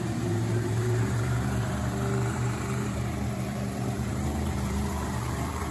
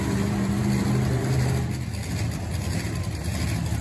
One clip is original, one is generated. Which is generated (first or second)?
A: first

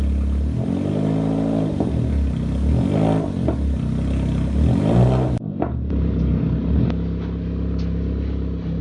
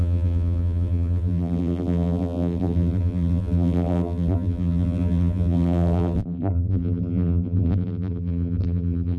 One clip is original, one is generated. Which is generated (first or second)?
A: second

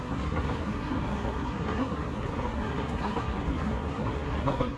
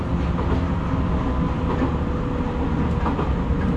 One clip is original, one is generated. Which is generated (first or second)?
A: first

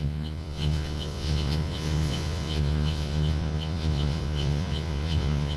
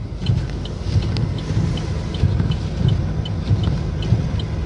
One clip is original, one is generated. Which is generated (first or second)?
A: first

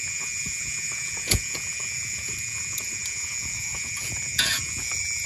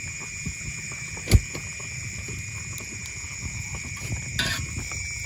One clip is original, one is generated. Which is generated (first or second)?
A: first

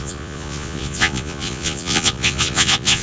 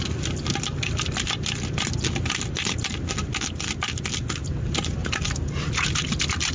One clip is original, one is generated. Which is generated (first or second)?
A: first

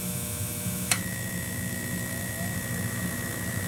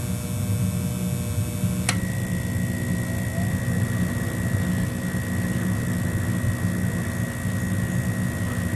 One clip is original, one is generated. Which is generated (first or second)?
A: first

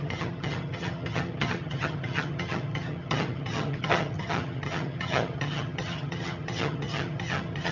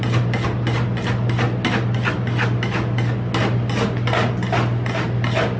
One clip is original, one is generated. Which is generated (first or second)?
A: first